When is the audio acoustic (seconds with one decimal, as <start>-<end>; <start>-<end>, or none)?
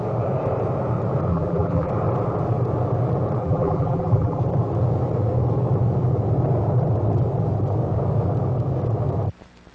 0.0-1.3; 1.9-3.4; 4.4-9.7